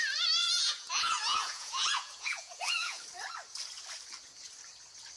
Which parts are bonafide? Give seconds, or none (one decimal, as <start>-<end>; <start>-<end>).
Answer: 0.0-0.4; 3.0-5.2